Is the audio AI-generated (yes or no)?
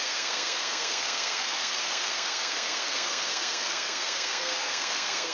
yes